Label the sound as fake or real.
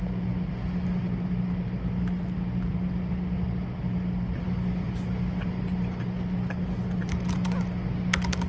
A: real